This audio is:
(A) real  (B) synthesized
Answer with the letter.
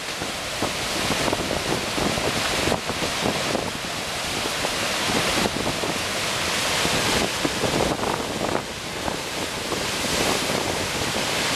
A